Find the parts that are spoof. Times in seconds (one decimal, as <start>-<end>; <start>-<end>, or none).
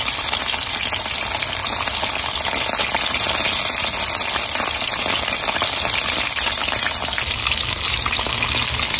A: none